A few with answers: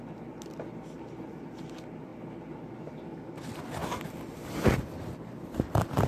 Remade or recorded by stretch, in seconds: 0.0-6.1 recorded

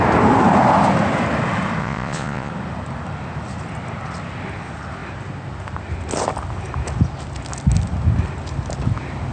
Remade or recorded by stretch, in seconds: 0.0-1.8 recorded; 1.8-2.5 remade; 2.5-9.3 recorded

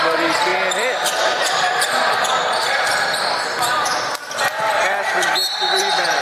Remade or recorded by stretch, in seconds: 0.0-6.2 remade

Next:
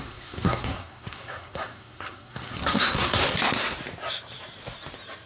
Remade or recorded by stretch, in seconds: 0.0-3.2 remade; 3.2-5.3 recorded

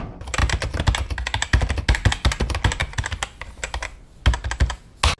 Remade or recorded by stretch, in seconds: 0.0-5.2 recorded

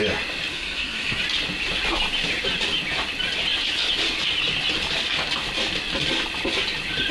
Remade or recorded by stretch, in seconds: 0.0-0.5 recorded; 0.5-1.2 remade; 1.2-7.1 recorded